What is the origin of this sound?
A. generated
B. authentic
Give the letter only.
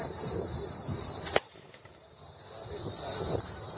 B